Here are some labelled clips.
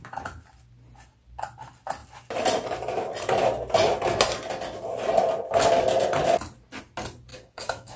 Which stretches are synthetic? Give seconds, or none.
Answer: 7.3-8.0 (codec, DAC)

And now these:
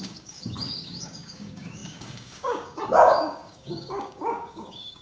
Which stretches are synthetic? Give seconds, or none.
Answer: 0.0-5.0 (codec, DAC)

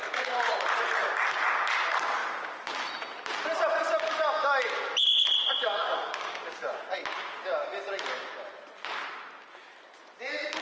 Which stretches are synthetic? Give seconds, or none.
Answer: 5.8-6.8 (codec, DAC)